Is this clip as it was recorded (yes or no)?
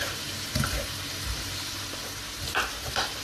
no